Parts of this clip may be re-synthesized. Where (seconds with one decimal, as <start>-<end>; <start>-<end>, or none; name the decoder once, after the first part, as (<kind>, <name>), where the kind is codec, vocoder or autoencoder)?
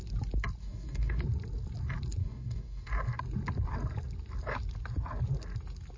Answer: 0.6-1.2 (codec, DAC); 2.2-2.9